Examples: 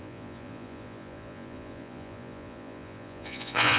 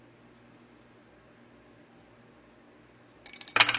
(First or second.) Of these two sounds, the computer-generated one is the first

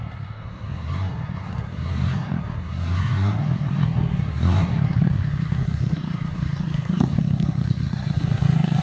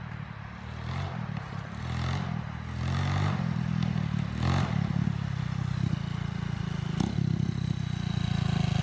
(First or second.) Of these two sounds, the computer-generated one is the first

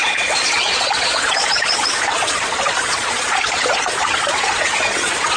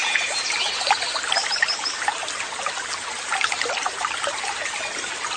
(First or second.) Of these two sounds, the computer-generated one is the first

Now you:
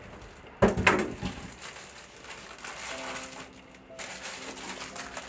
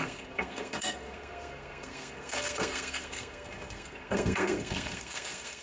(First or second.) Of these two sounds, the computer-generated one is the second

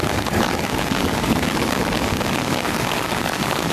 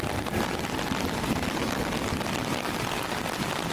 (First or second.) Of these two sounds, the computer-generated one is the first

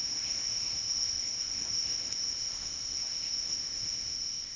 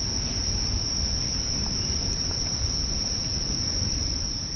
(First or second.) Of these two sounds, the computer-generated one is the first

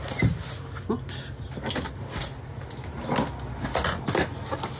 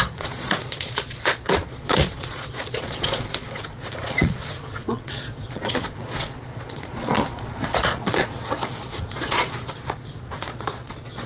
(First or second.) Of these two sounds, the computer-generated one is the second